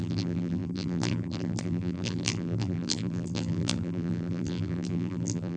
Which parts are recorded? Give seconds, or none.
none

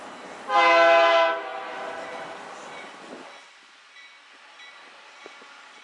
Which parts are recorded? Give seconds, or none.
0.0-5.8

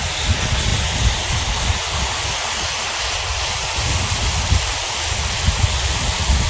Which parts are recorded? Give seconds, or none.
0.0-3.3; 5.9-6.5